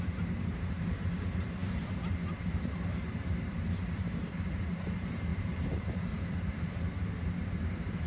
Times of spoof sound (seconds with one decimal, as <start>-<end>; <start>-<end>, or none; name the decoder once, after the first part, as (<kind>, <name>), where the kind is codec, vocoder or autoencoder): 0.0-8.1 (vocoder, BigVGAN v2)

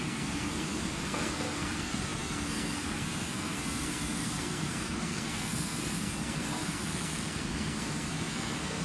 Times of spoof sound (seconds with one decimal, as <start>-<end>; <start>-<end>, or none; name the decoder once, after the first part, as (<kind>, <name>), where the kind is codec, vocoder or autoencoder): 0.0-8.8 (codec, SNAC)

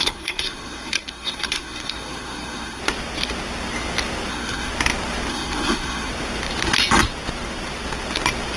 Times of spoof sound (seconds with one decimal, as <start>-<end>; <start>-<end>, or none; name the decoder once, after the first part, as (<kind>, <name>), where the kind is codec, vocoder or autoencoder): 0.0-2.8 (codec, SNAC); 4.3-4.7; 5.3-6.1